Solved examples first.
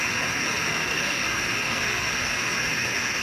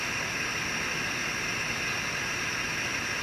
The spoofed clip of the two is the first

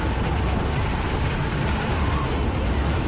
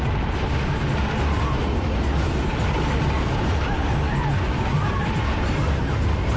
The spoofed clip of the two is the first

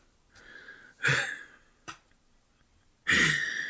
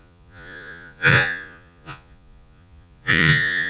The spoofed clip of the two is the second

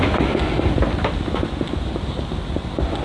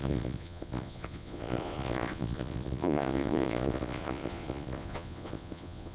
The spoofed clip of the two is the second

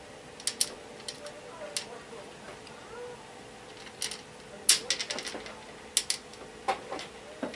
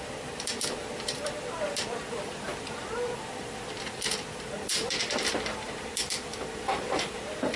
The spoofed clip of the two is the second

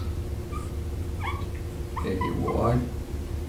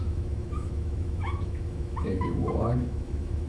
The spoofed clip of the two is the second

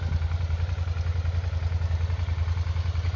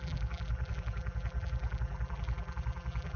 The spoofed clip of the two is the second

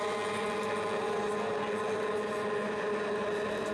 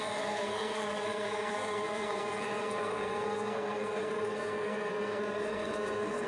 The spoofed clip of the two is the second